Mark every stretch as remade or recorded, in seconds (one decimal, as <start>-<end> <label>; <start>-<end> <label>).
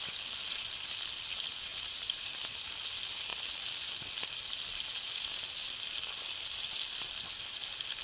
0.0-1.7 recorded; 1.7-2.4 remade; 2.4-8.0 recorded